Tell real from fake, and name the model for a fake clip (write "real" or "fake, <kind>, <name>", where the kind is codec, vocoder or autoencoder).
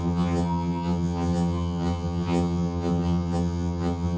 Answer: fake, vocoder, HiFi-GAN